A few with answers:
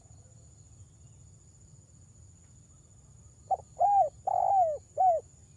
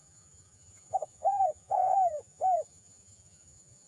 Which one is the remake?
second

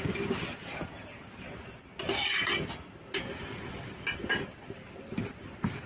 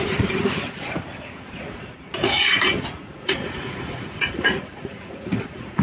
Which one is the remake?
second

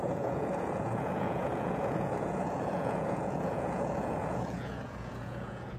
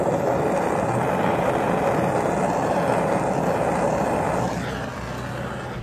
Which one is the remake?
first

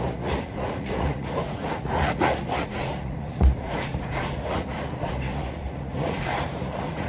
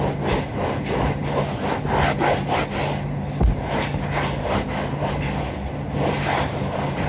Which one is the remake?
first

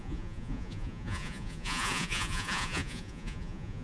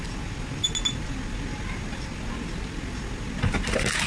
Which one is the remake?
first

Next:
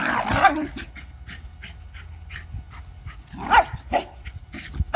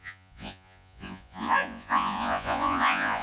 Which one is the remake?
second